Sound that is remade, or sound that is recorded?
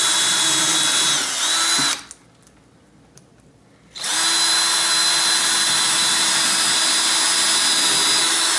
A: recorded